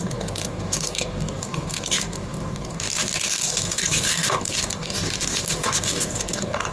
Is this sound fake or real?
fake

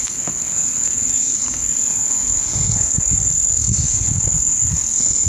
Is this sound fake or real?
fake